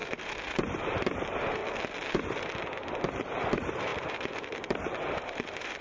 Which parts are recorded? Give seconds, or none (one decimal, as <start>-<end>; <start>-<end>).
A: 1.6-3.5